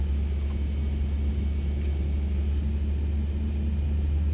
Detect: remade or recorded recorded